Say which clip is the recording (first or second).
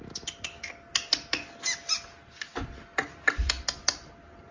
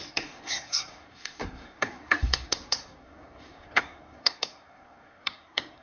first